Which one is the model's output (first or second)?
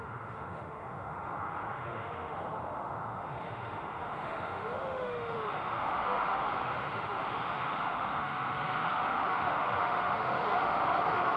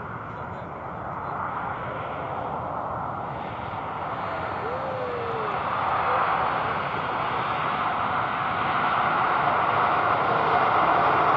first